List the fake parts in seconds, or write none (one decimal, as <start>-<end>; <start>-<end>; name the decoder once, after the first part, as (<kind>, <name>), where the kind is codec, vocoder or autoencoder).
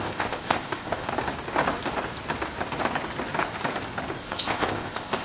0.0-1.1 (codec, ZipCodec); 4.2-5.2